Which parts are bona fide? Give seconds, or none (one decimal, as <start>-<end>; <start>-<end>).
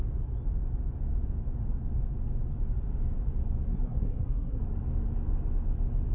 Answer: 0.0-3.7; 4.6-6.1